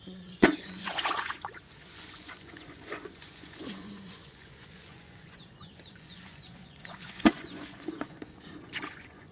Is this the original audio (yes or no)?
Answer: no